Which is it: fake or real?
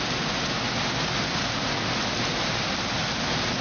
real